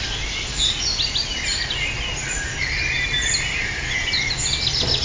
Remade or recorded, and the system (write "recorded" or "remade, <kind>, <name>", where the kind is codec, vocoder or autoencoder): recorded